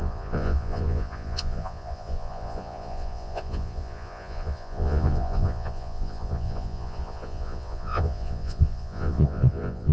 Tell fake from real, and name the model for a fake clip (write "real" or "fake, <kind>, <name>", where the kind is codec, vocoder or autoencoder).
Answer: fake, vocoder, Vocos